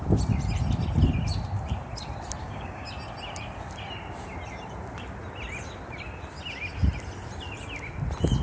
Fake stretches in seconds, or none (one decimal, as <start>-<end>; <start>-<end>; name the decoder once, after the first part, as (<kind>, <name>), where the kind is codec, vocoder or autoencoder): 2.4-2.9 (codec, DAC)